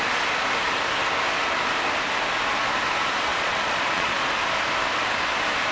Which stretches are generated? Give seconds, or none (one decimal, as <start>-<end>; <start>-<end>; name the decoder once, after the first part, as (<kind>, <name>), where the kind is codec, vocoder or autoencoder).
3.3-4.2 (vocoder, Vocos)